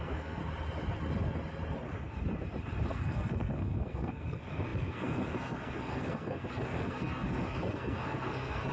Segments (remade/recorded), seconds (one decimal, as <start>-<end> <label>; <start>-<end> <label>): 0.0-0.4 remade; 0.4-2.9 recorded; 2.9-8.7 remade